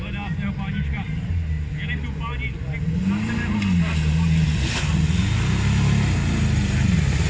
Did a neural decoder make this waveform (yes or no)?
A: no